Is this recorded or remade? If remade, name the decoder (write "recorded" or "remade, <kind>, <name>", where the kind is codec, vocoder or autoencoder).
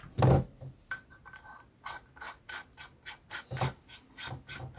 recorded